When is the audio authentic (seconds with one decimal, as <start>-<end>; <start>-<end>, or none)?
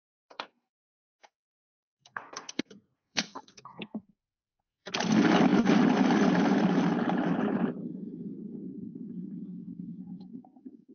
4.9-7.8